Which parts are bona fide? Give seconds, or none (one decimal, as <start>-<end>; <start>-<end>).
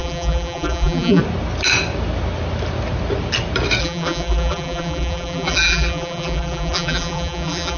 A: 1.2-3.8